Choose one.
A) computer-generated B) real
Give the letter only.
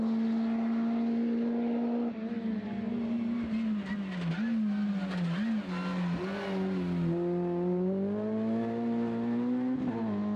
B